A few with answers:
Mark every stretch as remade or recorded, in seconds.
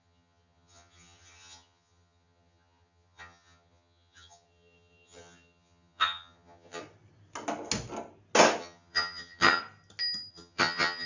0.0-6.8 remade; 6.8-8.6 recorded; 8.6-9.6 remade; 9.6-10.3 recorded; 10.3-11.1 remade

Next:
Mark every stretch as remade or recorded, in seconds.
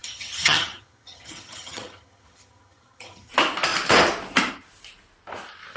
0.0-3.3 remade; 3.3-5.8 recorded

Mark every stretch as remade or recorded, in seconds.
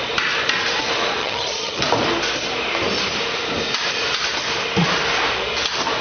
0.0-1.2 recorded; 1.2-1.8 remade; 1.8-6.0 recorded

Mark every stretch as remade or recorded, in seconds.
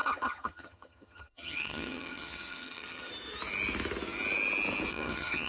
0.0-3.1 remade; 3.1-4.9 recorded; 4.9-5.5 remade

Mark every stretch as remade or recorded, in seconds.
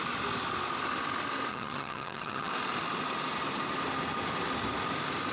0.0-1.5 recorded; 1.5-2.5 remade; 2.5-5.3 recorded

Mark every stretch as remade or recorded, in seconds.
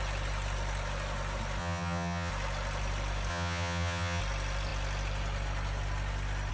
0.0-1.6 recorded; 1.6-2.3 remade; 2.3-3.3 recorded; 3.3-4.2 remade; 4.2-6.5 recorded